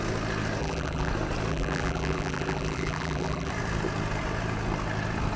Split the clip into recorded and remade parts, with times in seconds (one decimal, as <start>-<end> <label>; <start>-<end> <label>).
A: 0.0-0.6 recorded; 0.6-1.1 remade; 1.1-1.5 recorded; 1.5-3.5 remade; 3.5-5.4 recorded